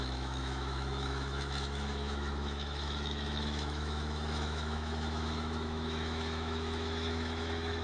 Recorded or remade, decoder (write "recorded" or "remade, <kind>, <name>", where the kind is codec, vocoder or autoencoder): remade, autoencoder, DAC-VAE